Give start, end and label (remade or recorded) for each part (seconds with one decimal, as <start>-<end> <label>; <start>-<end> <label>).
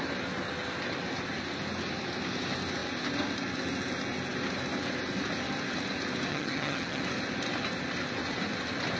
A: 0.0-6.3 recorded; 6.3-7.0 remade; 7.0-9.0 recorded